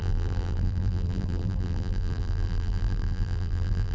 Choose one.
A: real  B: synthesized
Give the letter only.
B